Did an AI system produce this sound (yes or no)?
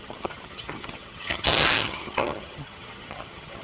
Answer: yes